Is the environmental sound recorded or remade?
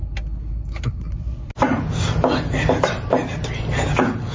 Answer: recorded